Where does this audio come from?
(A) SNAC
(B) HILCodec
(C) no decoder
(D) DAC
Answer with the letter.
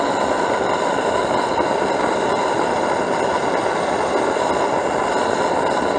C